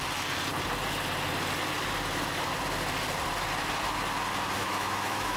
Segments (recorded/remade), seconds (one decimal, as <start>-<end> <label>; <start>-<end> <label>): 0.0-4.6 recorded; 4.6-5.4 remade